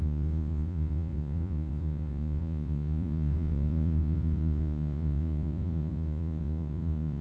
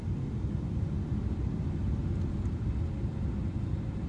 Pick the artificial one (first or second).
first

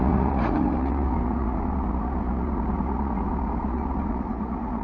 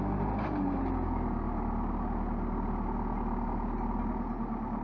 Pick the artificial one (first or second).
first